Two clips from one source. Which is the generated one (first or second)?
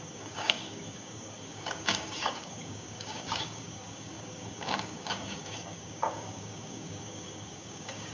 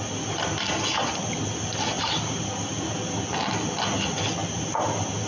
first